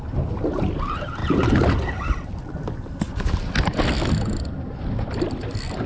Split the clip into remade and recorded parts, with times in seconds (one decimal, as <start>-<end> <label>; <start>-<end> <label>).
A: 0.0-5.9 recorded